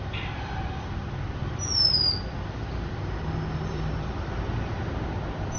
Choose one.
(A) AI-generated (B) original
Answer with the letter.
B